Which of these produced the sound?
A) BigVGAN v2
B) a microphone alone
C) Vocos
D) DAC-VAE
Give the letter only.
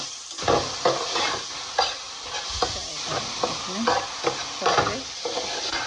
B